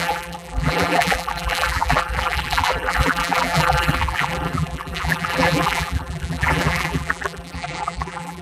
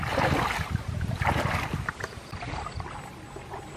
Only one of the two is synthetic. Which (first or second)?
first